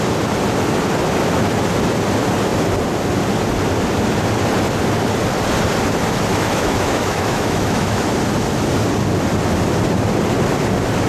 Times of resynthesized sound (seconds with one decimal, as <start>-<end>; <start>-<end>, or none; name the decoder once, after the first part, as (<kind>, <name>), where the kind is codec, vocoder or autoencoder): 6.3-8.0 (autoencoder, DAC-VAE)